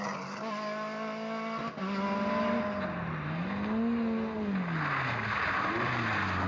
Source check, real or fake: real